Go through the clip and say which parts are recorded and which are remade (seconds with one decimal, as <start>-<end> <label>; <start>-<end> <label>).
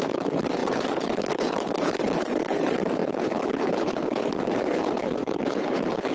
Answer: 0.0-6.1 remade